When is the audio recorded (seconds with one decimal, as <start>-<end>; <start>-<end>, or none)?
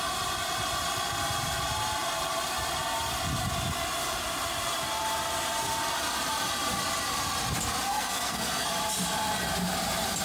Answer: 0.0-7.9; 8.7-10.2